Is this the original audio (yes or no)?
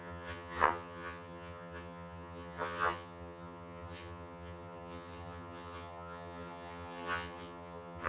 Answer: no